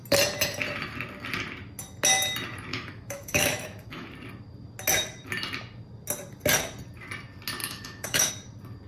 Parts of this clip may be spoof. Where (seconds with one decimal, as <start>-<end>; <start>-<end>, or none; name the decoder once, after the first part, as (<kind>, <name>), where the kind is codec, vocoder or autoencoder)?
2.7-4.1 (autoencoder, DAC-VAE); 7.6-8.3